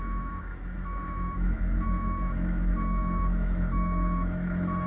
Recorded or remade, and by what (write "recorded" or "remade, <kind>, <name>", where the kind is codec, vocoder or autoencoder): remade, autoencoder, DAC-VAE